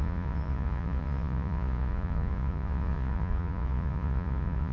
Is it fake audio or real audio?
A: fake